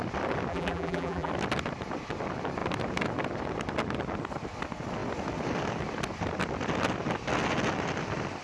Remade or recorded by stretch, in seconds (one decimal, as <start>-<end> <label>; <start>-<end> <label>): 0.0-0.5 recorded; 0.5-1.3 remade; 1.3-8.4 recorded